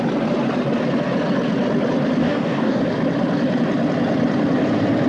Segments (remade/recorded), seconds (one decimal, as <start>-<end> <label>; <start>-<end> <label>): 0.0-2.2 recorded; 2.2-2.8 remade; 2.8-5.1 recorded